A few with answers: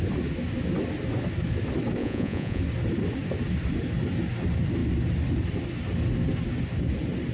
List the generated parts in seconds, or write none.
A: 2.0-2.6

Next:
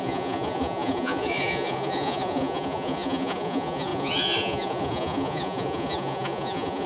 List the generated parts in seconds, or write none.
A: 0.0-6.9

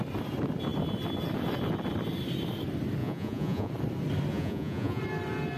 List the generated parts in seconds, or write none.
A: 3.0-3.7; 4.3-5.0

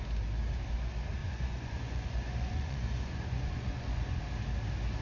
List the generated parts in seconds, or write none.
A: 1.2-4.2

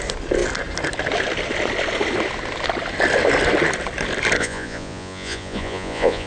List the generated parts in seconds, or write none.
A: 4.4-6.3

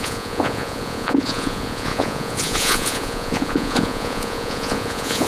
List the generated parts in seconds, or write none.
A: 0.0-5.3